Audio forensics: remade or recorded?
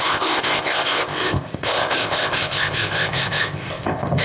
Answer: remade